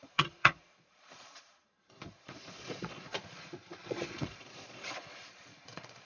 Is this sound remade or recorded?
remade